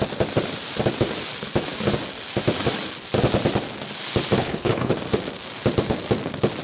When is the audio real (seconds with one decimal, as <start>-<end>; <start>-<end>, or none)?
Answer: 0.0-4.4; 4.9-6.6